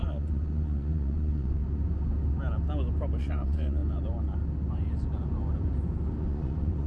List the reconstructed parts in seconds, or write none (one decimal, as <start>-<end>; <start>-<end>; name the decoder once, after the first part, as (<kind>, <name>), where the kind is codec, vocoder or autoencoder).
0.0-1.6 (vocoder, Vocos); 3.2-3.8; 6.2-6.9